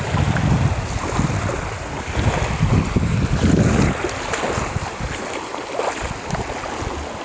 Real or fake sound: real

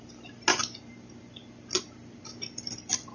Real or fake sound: real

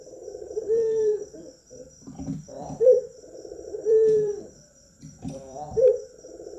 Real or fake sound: fake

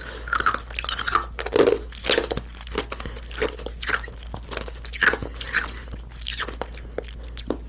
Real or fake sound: real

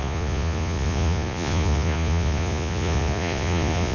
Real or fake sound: fake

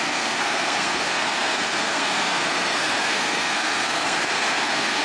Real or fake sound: fake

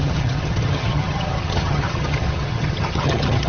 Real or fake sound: fake